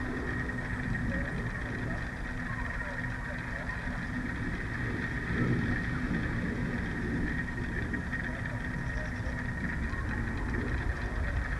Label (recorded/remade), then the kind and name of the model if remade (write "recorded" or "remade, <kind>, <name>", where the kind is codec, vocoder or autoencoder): recorded